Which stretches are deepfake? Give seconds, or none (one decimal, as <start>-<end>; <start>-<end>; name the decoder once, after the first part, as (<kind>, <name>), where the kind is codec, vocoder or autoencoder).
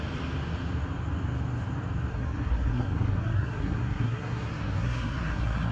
2.1-5.7 (codec, SNAC)